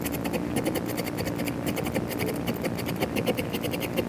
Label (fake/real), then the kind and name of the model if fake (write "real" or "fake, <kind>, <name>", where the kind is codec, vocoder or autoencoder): real